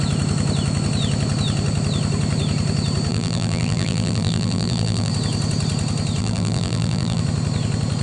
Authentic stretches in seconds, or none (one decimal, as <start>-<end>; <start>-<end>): 0.0-3.1; 5.1-6.2; 7.2-8.0